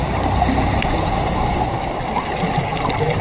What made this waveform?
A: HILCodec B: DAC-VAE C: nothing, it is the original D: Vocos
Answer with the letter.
C